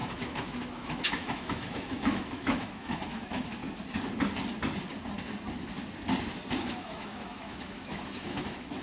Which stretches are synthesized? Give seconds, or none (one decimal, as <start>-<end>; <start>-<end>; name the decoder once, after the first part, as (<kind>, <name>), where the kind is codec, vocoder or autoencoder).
0.0-3.6 (autoencoder, DAC-VAE); 6.6-8.8